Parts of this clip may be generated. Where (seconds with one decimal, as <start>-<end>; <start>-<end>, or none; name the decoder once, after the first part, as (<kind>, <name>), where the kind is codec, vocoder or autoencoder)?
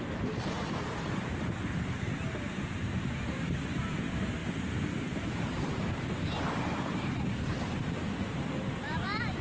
0.0-4.4 (vocoder, BigVGAN v2); 5.0-9.4